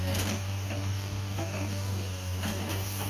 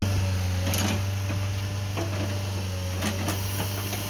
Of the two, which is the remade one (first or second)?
first